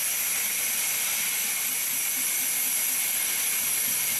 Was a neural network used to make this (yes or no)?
no